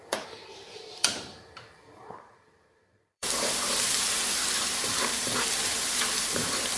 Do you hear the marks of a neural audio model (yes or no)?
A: yes